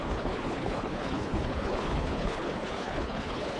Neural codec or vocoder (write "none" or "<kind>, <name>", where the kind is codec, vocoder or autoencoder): codec, HILCodec